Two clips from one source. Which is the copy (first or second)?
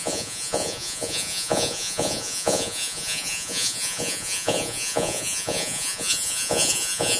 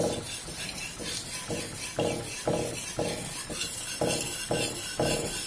first